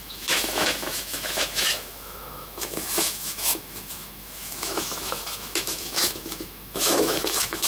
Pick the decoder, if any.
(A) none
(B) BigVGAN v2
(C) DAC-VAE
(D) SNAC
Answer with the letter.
C